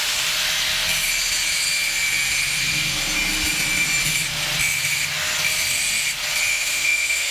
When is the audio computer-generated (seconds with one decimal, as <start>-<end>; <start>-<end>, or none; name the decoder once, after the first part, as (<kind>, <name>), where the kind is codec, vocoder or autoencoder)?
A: 6.5-7.3 (autoencoder, DAC-VAE)